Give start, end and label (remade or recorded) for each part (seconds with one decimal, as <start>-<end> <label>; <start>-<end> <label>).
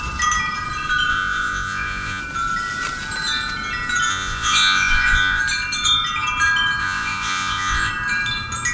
0.0-1.1 recorded; 1.1-2.2 remade; 2.2-4.1 recorded; 4.1-5.4 remade; 5.4-6.8 recorded; 6.8-7.9 remade; 7.9-8.7 recorded